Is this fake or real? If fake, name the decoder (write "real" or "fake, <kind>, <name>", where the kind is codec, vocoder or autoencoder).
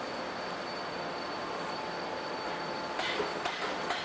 real